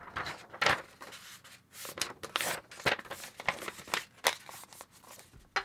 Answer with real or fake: real